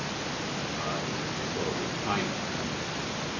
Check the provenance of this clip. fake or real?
real